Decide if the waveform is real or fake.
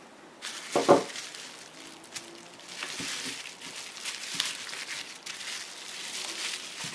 real